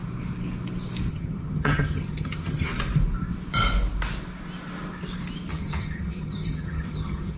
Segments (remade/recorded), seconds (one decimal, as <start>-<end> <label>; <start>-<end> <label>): 0.0-1.1 recorded; 1.1-2.7 remade; 2.7-5.5 recorded; 5.5-7.4 remade